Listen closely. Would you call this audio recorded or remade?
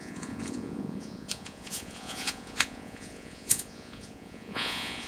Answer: remade